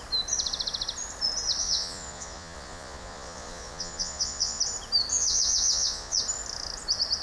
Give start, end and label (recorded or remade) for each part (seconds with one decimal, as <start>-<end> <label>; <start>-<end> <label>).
0.0-1.6 recorded; 1.6-4.6 remade; 4.6-5.1 recorded; 5.1-6.2 remade; 6.2-7.2 recorded